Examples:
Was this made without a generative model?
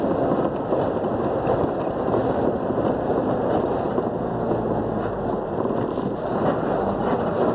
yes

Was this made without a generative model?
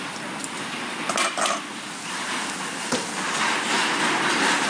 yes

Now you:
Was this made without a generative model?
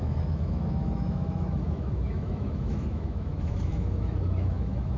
no